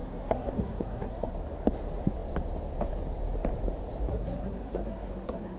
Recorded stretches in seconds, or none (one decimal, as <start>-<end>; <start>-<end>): 1.3-4.1